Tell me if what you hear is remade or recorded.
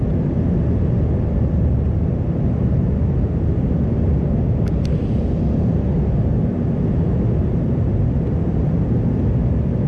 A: remade